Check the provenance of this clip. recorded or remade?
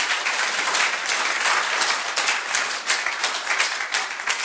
remade